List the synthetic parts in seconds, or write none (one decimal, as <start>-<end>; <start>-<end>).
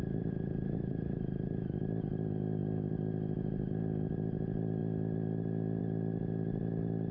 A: none